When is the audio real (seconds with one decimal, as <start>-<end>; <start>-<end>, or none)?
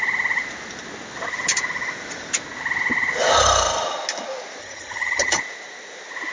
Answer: 0.0-4.6; 5.4-6.3